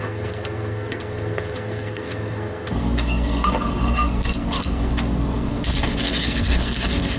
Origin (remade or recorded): remade